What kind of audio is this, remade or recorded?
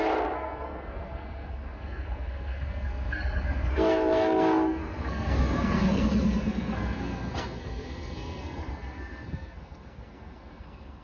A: remade